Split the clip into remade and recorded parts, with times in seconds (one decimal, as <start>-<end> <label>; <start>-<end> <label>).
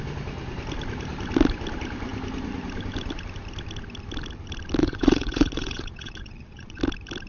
0.0-4.8 recorded; 4.8-6.8 remade; 6.8-7.3 recorded